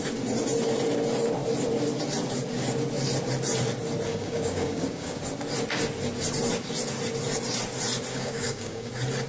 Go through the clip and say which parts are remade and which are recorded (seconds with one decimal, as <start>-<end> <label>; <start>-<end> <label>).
0.0-4.1 recorded; 4.1-5.2 remade; 5.2-8.1 recorded; 8.1-8.9 remade; 8.9-9.3 recorded